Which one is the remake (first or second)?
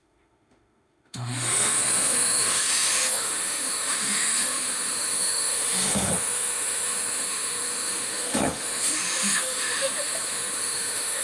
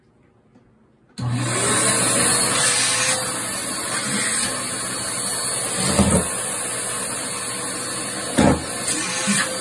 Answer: first